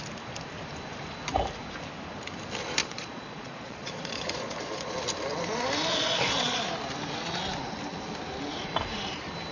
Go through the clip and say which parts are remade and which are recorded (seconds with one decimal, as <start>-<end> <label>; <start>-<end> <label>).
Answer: 0.0-2.8 recorded; 2.8-4.9 remade; 4.9-5.9 recorded; 5.9-6.6 remade; 6.6-9.5 recorded